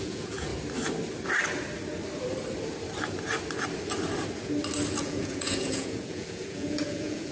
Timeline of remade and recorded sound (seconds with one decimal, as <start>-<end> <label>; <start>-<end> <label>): 0.0-0.5 remade; 0.5-4.9 recorded; 4.9-7.3 remade